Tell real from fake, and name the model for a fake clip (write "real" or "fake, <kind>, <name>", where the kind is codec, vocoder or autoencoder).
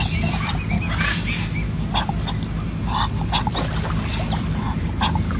real